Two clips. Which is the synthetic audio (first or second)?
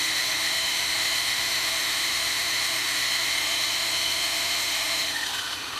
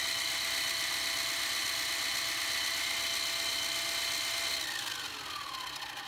first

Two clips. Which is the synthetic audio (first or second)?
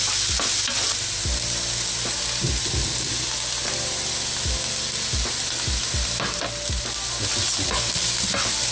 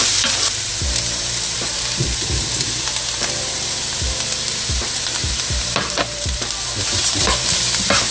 second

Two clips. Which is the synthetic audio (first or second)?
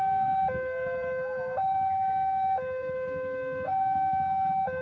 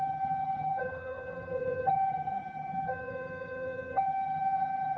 second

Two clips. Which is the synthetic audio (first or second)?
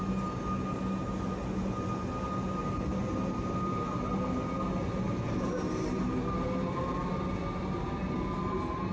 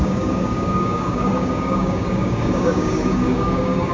second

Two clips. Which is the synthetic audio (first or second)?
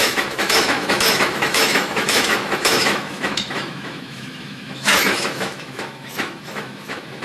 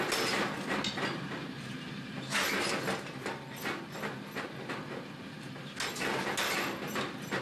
first